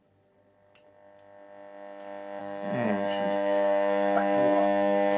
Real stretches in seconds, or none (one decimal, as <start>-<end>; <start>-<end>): 0.0-2.4